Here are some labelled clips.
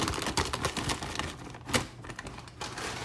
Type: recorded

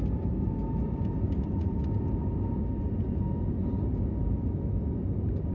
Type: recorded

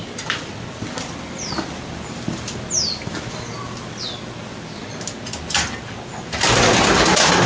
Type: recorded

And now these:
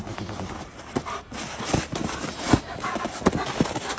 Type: recorded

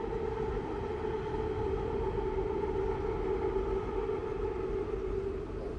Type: recorded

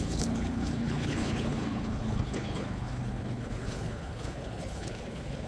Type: remade